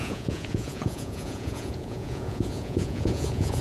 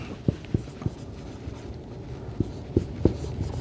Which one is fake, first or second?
first